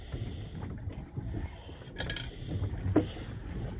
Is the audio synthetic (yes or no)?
no